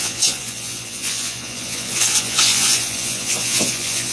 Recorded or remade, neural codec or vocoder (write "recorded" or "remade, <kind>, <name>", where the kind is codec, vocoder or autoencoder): remade, vocoder, Vocos